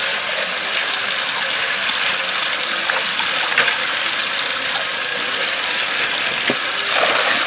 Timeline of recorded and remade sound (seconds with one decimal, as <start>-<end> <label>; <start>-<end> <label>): 0.0-7.5 recorded